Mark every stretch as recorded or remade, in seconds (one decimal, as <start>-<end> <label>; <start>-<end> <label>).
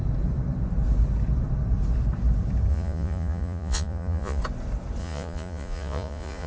0.0-2.7 recorded; 2.7-4.4 remade; 4.4-5.0 recorded; 5.0-6.5 remade